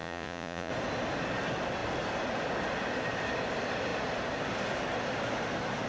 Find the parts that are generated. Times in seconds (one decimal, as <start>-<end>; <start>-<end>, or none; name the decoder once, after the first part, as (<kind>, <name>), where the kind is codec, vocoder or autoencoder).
0.0-0.7 (vocoder, Vocos)